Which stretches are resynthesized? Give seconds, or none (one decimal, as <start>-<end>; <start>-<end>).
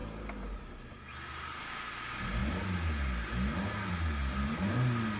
none